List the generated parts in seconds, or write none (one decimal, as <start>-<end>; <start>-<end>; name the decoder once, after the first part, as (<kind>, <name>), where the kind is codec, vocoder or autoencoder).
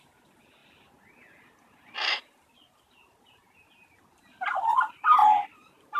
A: 5.2-6.0 (vocoder, BigVGAN v2)